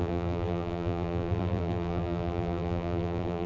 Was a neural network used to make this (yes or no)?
yes